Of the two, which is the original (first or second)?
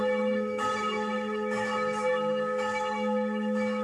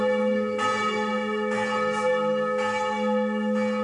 second